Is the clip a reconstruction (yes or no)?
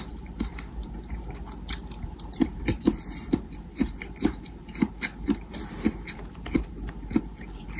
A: yes